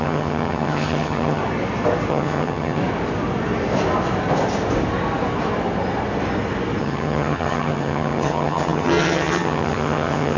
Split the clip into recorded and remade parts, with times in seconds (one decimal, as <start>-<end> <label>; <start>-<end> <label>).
0.0-1.4 remade; 1.4-2.1 recorded; 2.1-2.8 remade; 2.8-6.8 recorded; 6.8-10.4 remade